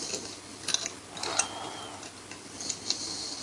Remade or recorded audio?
recorded